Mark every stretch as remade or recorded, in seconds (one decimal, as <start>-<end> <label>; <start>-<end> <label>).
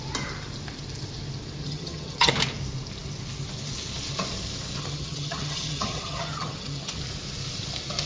0.0-1.6 recorded; 1.6-2.3 remade; 2.3-4.8 recorded; 4.8-7.0 remade; 7.0-8.1 recorded